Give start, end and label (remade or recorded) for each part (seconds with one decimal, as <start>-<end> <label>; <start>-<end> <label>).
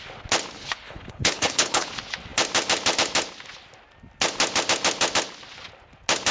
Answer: 0.0-0.6 recorded; 0.6-1.9 remade; 1.9-6.3 recorded